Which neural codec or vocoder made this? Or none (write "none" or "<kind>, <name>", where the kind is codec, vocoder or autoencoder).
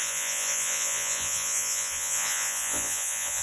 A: vocoder, Vocos